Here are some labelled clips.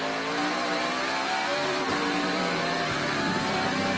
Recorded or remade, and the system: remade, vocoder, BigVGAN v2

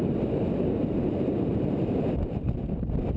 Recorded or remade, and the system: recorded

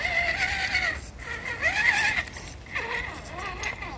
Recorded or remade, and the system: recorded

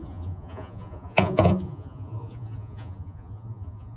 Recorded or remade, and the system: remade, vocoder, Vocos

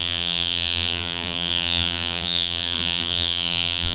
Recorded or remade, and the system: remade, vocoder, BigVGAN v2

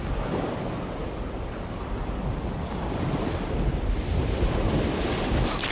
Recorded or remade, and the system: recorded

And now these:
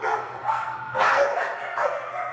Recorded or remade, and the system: remade, codec, SNAC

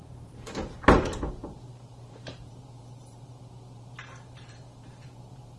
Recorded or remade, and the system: remade, vocoder, BigVGAN v2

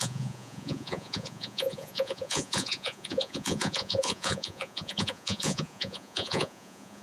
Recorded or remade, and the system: remade, vocoder, Vocos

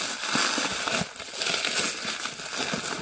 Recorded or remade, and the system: recorded